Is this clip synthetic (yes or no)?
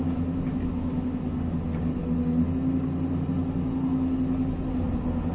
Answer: no